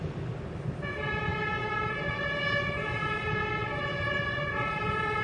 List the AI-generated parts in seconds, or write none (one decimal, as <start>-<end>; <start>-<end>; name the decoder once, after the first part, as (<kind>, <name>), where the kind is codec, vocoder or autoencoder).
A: none